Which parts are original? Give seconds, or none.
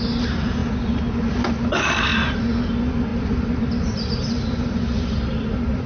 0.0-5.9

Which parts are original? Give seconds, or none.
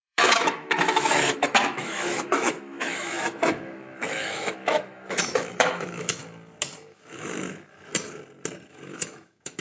6.2-6.8; 7.9-8.7